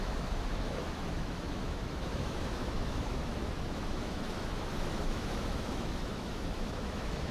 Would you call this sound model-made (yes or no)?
yes